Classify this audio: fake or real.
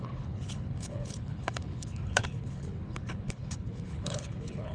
fake